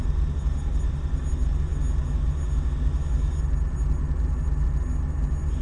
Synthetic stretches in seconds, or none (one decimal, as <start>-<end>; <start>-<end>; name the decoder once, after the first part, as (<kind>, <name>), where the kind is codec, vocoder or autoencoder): 0.0-1.2 (vocoder, BigVGAN v2)